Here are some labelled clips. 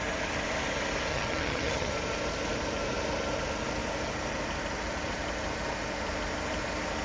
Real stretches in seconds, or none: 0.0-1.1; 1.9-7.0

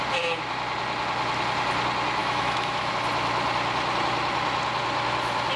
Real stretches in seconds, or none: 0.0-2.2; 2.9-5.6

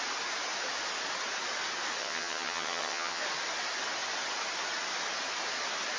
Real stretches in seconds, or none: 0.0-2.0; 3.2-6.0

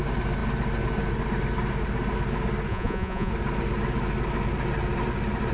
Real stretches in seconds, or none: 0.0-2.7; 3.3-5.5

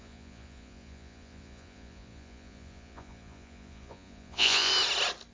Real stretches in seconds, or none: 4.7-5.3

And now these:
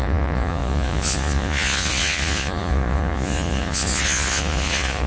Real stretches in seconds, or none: none